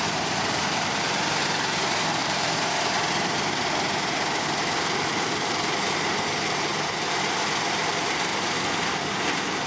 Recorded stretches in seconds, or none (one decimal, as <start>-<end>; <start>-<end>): none